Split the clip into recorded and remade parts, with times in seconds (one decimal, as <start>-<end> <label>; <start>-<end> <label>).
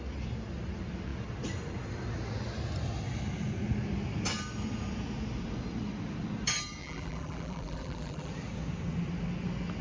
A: 0.0-6.8 recorded; 6.8-8.3 remade; 8.3-9.8 recorded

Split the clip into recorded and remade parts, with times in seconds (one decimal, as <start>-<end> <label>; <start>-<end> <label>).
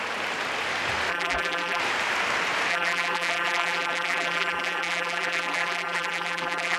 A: 0.0-1.1 recorded; 1.1-1.8 remade; 1.8-2.7 recorded; 2.7-6.8 remade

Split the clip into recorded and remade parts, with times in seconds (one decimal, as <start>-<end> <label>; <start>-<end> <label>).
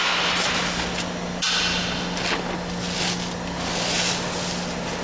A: 0.0-5.0 recorded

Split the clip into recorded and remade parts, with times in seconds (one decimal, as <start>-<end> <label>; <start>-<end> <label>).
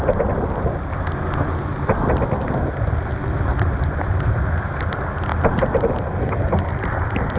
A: 0.0-3.5 recorded; 3.5-4.4 remade; 4.4-5.3 recorded; 5.3-5.9 remade; 5.9-7.4 recorded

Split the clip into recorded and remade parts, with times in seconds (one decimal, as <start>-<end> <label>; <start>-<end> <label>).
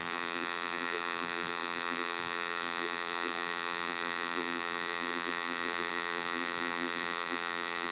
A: 0.0-7.9 remade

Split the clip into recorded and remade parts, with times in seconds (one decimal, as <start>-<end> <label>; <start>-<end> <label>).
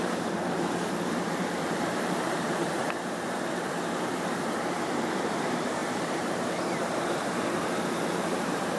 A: 0.0-8.8 remade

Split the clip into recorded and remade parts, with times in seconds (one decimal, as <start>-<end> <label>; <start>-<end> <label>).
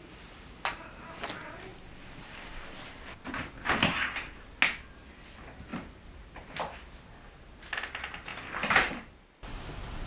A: 0.0-1.7 recorded; 1.7-3.8 remade; 3.8-5.7 recorded; 5.7-6.2 remade; 6.2-8.3 recorded; 8.3-9.2 remade; 9.2-10.1 recorded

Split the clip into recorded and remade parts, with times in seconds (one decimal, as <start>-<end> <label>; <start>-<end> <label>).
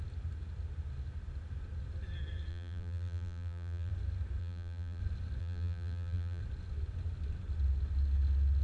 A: 0.0-2.5 recorded; 2.5-3.9 remade; 3.9-4.4 recorded; 4.4-5.0 remade; 5.0-5.4 recorded; 5.4-6.4 remade; 6.4-8.6 recorded